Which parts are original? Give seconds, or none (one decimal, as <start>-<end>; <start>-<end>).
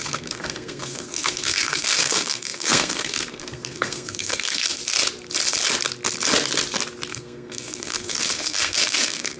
4.8-7.1